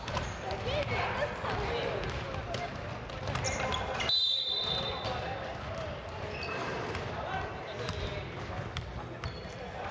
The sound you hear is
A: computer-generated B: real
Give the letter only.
B